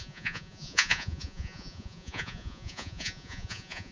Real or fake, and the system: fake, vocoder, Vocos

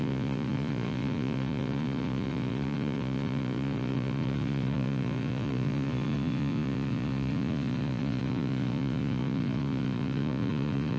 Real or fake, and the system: fake, vocoder, Vocos